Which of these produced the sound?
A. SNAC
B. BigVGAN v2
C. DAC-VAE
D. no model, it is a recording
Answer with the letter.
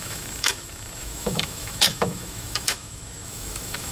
C